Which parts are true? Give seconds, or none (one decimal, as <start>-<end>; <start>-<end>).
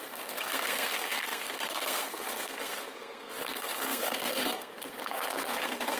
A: none